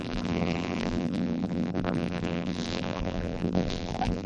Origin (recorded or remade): remade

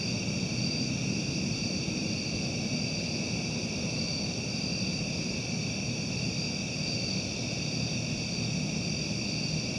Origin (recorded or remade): recorded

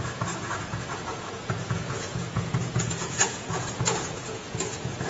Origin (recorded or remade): remade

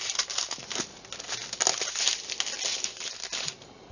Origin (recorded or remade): recorded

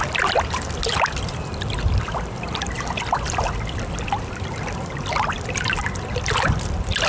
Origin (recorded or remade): remade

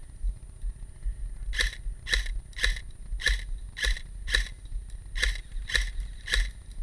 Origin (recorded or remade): recorded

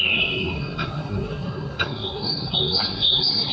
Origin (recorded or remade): remade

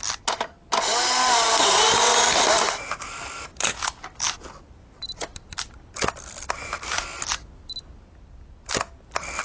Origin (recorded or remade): recorded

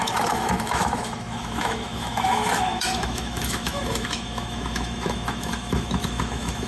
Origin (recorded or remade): remade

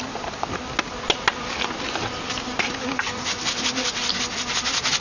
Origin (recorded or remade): recorded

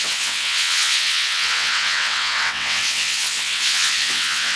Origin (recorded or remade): remade